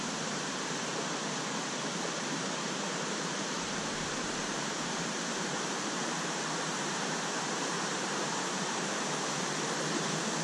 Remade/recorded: remade